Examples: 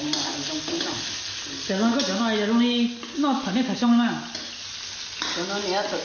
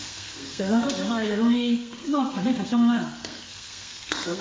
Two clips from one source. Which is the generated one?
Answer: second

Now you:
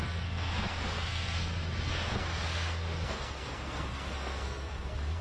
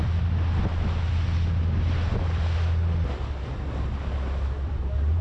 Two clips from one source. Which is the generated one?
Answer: first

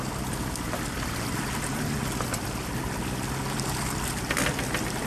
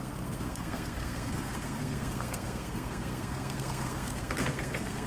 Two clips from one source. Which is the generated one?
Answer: second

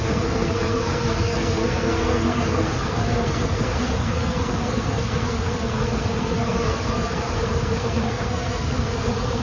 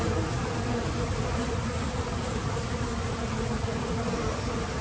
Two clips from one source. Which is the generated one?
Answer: first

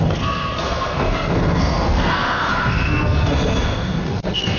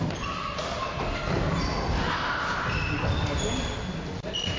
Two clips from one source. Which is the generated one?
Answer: first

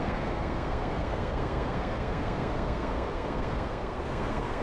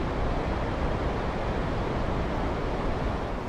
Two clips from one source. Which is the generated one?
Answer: first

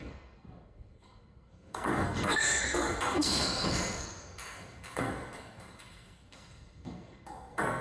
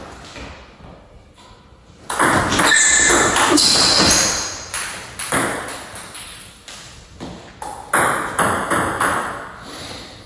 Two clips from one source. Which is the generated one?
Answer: first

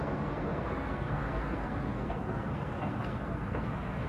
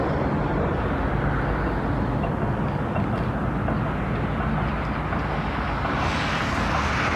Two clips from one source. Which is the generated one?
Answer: first